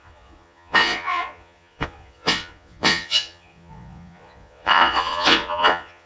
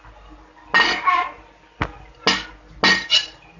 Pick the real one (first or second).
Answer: second